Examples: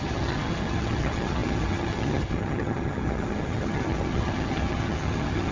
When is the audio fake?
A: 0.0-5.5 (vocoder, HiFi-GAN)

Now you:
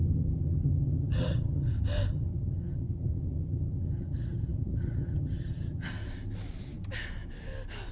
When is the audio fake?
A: 0.0-1.7 (vocoder, HiFi-GAN); 2.1-5.9

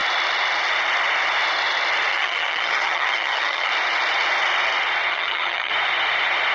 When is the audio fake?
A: 2.1-3.7 (vocoder, HiFi-GAN); 5.1-5.7